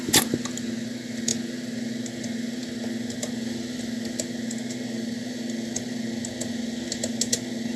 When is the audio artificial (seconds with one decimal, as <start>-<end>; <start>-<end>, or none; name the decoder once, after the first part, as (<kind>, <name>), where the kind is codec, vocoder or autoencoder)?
none